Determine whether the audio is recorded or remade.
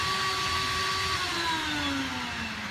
recorded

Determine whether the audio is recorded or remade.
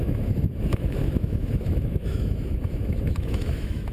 remade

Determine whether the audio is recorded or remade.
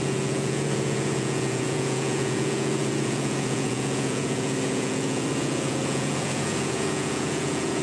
remade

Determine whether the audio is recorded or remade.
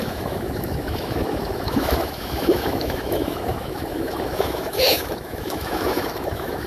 remade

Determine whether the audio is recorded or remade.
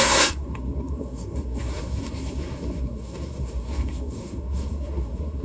remade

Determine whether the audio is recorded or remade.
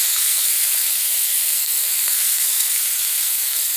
remade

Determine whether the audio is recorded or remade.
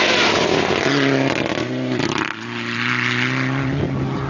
recorded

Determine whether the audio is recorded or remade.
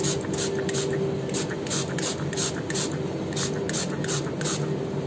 recorded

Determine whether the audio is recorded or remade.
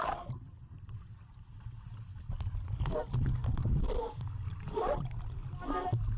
recorded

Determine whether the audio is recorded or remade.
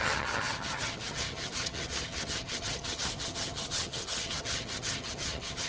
remade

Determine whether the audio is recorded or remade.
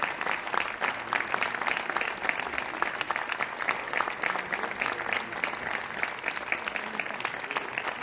recorded